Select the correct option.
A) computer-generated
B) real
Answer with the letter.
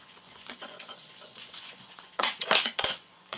A